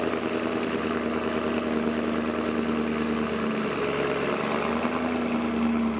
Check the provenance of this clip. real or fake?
real